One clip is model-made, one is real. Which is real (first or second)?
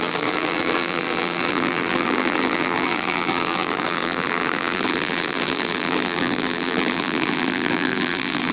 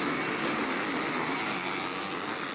second